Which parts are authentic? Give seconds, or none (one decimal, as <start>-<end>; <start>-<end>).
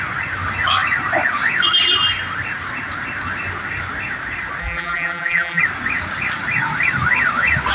0.0-4.6; 5.6-7.7